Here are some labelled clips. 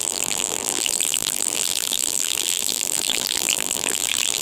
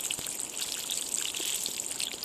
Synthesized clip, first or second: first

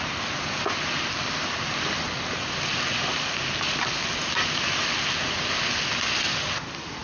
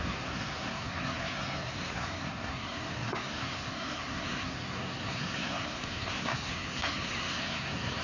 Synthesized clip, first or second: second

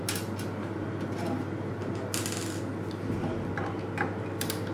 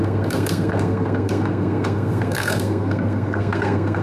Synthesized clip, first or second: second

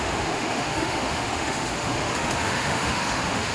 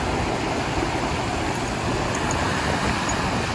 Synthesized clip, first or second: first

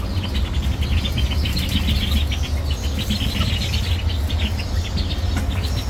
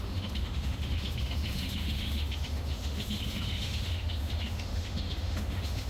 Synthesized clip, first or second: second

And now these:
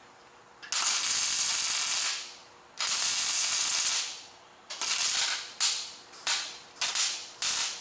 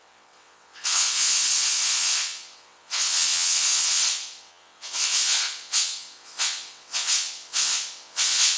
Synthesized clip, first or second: second